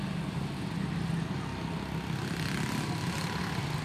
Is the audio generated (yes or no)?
no